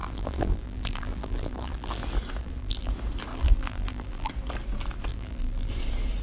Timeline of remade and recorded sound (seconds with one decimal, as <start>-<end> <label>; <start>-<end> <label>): 0.0-2.0 remade; 2.0-2.4 recorded; 2.4-2.9 remade; 2.9-3.3 recorded; 3.3-4.3 remade; 4.3-5.1 recorded; 5.1-5.7 remade; 5.7-6.2 recorded